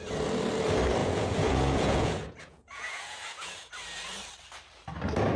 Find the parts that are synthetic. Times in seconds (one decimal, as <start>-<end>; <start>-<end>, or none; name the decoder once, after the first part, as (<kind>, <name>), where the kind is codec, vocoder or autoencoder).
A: 1.0-3.7 (vocoder, Vocos)